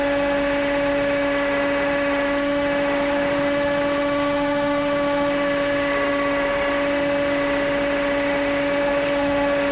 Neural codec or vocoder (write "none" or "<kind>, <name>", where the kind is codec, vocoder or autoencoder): autoencoder, DAC-VAE